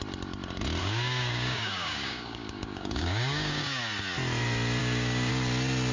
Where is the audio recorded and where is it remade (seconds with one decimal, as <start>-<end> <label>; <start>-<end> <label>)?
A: 0.0-0.8 recorded; 0.8-3.8 remade; 3.8-4.8 recorded; 4.8-5.3 remade; 5.3-5.9 recorded